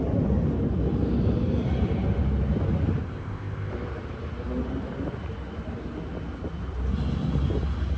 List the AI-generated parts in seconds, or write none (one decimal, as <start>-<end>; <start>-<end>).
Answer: 3.0-3.7